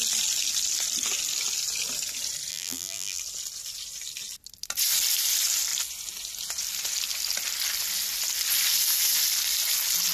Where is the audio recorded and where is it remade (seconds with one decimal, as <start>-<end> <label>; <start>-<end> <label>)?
0.0-2.5 recorded; 2.5-3.2 remade; 3.2-10.1 recorded